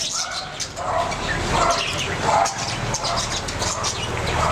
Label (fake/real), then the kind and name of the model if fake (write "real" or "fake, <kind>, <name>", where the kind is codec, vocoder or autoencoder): real